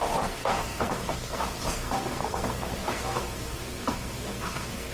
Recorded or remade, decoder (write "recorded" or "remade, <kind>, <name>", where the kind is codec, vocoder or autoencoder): remade, codec, SNAC